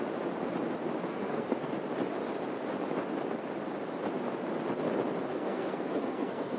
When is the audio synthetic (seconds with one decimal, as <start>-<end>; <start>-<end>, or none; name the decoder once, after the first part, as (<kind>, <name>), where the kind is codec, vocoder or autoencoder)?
1.1-1.7 (codec, SNAC); 5.3-6.6